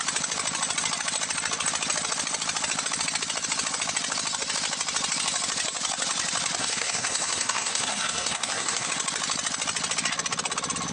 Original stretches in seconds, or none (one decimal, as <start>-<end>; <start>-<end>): 0.0-6.6; 8.9-10.9